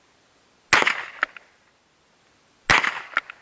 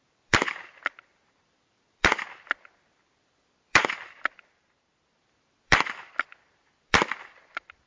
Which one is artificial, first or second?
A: second